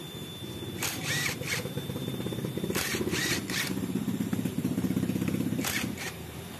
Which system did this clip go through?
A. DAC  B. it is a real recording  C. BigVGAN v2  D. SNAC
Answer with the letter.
C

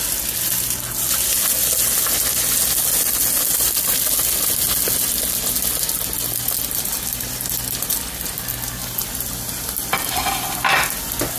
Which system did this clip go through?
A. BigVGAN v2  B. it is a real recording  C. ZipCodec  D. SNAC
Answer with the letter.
B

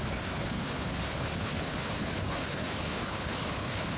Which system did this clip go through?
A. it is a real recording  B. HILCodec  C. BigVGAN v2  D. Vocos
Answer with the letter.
B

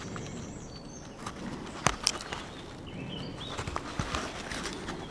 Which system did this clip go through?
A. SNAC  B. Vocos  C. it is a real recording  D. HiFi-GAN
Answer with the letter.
C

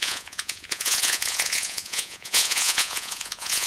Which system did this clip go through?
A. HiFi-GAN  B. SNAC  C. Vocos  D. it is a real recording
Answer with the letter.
C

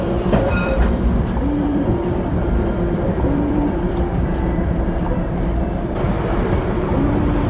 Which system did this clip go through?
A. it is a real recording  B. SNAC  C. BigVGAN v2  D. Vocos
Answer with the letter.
C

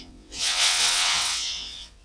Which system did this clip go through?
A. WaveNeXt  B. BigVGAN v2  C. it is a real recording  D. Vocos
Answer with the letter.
A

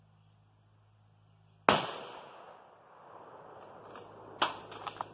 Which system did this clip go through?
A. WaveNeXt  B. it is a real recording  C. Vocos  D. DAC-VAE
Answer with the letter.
B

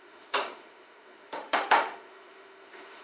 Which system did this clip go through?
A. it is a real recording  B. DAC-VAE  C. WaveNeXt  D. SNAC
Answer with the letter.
B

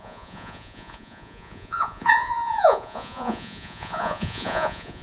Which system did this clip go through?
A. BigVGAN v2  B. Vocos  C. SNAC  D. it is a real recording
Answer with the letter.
B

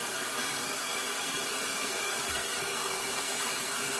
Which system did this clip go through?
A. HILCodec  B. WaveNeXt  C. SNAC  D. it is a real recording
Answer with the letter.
C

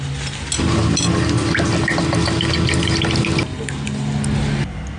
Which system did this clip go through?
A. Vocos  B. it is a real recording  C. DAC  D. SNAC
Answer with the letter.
B